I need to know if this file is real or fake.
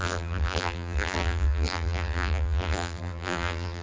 fake